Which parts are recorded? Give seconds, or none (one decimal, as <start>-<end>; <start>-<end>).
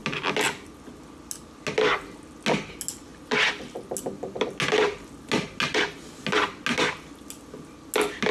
0.0-8.3